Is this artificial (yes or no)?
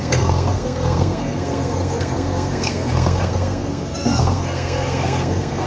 yes